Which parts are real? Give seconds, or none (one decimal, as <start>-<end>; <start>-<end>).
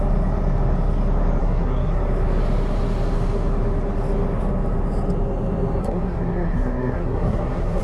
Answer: 0.0-1.4; 2.0-5.8